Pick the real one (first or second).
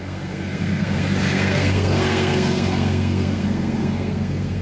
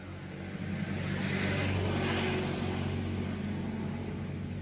second